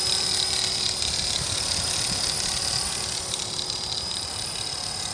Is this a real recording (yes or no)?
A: yes